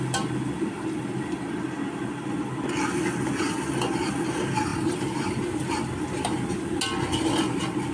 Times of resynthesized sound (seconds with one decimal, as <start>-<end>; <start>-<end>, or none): none